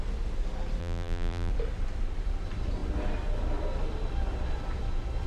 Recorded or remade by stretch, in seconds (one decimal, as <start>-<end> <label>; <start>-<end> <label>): 0.0-0.8 recorded; 0.8-1.5 remade; 1.5-5.3 recorded